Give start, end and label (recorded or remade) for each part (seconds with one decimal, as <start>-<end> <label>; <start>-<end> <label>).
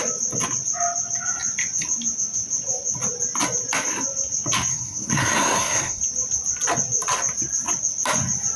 0.0-4.7 recorded; 4.7-6.0 remade; 6.0-8.6 recorded